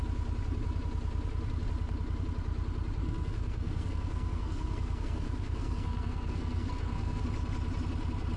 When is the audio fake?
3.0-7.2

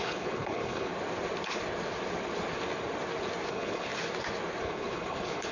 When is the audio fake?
0.0-0.9; 3.5-3.9; 4.6-5.5

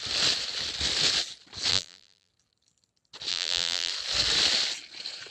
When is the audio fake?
1.7-2.3; 3.3-3.9

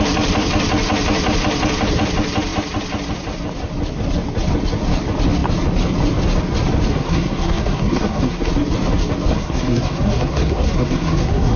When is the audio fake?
6.9-8.5; 9.3-11.6